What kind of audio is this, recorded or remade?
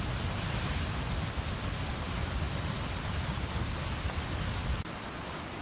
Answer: remade